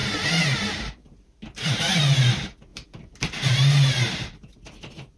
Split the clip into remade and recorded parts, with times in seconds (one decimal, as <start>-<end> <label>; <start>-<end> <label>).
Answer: 0.0-5.2 recorded